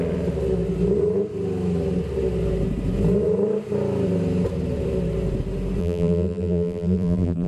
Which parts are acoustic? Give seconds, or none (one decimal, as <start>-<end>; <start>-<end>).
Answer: 0.0-5.8